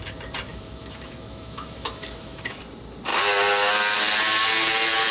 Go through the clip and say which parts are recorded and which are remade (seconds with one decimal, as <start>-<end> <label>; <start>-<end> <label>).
0.0-0.5 recorded; 0.5-2.6 remade; 2.6-5.1 recorded